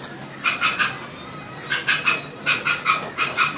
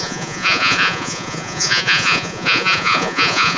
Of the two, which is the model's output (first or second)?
second